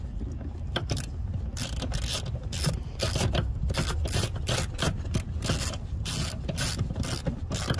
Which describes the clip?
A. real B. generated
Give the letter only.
A